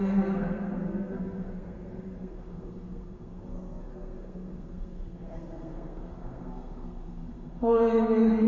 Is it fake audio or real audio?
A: fake